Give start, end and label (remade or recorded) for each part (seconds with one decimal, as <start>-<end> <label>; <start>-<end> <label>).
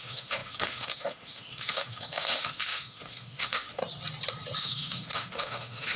0.0-3.8 remade; 3.8-4.6 recorded; 4.6-6.0 remade